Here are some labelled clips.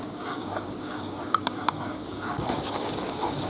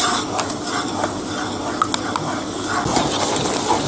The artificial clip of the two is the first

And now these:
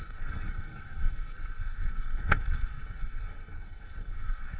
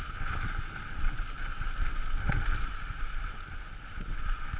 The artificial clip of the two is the first